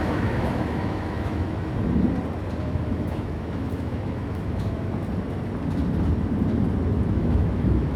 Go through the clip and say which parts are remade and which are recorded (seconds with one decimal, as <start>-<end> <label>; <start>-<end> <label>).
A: 0.0-1.7 remade; 1.7-2.6 recorded; 2.6-5.0 remade; 5.0-7.1 recorded; 7.1-8.0 remade